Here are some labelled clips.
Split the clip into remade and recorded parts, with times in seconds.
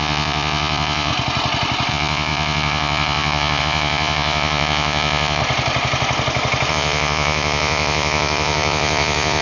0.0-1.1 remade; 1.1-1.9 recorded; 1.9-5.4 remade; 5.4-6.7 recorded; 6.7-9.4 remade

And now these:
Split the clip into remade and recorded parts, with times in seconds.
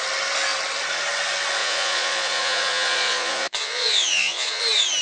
0.0-1.6 recorded; 1.6-4.6 remade; 4.6-5.0 recorded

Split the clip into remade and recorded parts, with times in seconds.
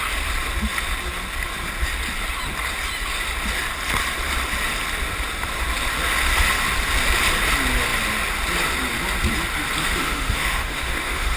0.0-9.8 recorded; 9.8-11.4 remade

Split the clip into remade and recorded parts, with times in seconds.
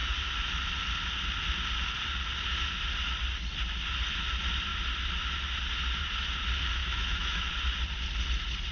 0.0-6.8 recorded; 6.8-7.5 remade; 7.5-8.7 recorded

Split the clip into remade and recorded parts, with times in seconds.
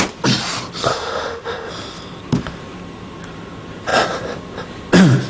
0.0-0.9 recorded; 0.9-1.7 remade; 1.7-5.3 recorded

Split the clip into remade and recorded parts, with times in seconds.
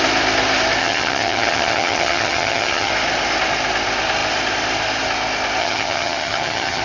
0.0-0.8 recorded; 0.8-2.9 remade; 2.9-5.6 recorded; 5.6-6.8 remade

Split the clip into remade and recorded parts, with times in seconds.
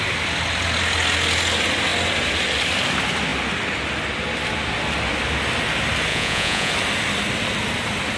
0.0-6.1 recorded; 6.1-6.7 remade; 6.7-8.2 recorded